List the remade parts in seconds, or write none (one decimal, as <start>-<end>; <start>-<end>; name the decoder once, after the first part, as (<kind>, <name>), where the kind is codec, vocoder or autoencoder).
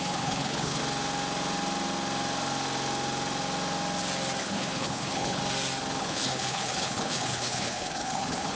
0.0-0.8 (codec, HILCodec); 4.4-5.4; 6.0-8.5